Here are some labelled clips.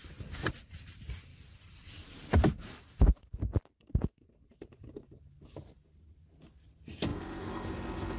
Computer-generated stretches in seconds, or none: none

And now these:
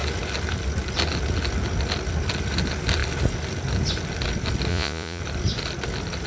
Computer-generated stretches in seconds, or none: 4.7-5.2 (vocoder, Vocos)

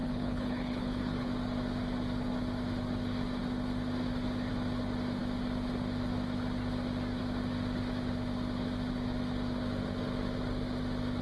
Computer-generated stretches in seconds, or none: 0.0-1.3 (codec, HILCodec)

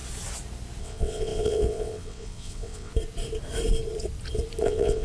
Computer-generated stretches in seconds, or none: 0.8-2.9 (vocoder, WaveNeXt); 4.6-5.0

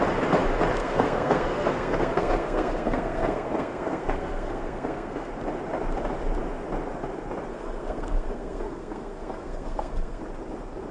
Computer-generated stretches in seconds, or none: 0.8-5.3 (codec, SNAC); 7.5-10.2

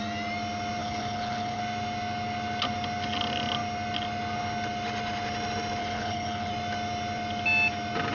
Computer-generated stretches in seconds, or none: 0.8-1.6 (codec, HILCodec); 5.8-6.5

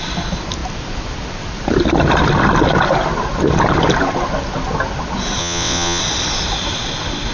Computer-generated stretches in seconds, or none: 5.4-6.0 (vocoder, WaveNeXt)

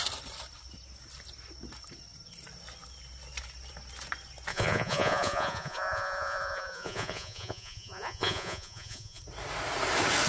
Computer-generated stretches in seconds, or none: 4.5-9.2 (vocoder, Vocos)